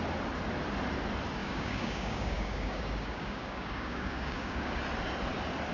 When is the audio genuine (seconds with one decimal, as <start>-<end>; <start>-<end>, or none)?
0.0-1.4; 4.8-5.7